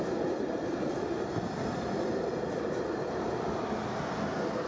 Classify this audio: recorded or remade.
recorded